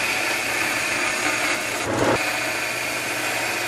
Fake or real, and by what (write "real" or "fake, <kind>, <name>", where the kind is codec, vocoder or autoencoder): real